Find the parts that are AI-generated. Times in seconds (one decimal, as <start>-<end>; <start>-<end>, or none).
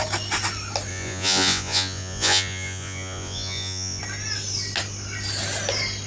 0.9-4.0